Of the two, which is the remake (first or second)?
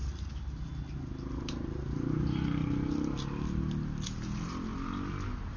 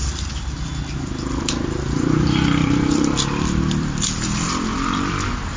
second